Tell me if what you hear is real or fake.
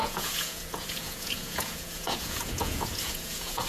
fake